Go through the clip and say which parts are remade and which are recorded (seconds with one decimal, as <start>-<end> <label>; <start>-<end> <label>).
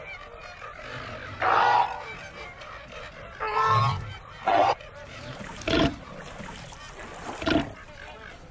0.0-4.6 recorded; 4.6-5.9 remade; 5.9-8.5 recorded